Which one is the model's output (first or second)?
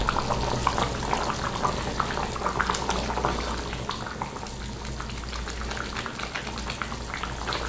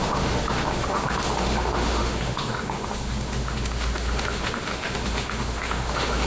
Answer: second